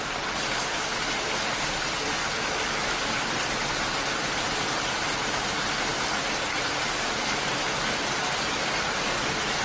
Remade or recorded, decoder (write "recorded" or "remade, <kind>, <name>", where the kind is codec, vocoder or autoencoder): recorded